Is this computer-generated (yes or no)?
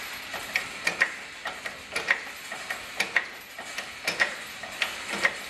no